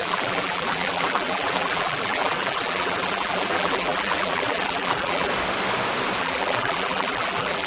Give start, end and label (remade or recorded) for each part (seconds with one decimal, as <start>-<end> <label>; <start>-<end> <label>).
0.0-5.3 remade; 5.3-6.2 recorded; 6.2-7.7 remade